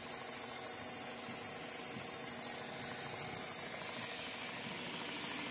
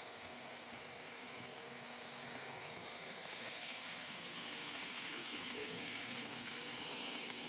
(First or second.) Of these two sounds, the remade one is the second